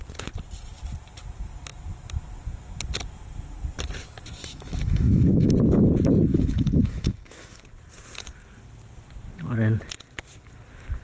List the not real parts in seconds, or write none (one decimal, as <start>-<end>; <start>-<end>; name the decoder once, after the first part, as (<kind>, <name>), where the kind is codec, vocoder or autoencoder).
4.4-5.5 (autoencoder, DAC-VAE); 6.3-7.6